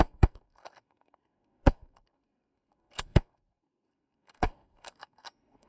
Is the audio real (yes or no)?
no